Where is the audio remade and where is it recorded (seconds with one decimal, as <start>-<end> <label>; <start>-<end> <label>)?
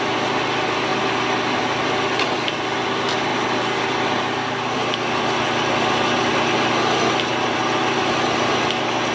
0.0-7.3 recorded; 7.3-8.5 remade; 8.5-9.1 recorded